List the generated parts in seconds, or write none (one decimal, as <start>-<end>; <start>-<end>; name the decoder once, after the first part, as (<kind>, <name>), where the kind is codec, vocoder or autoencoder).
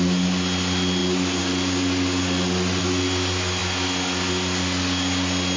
none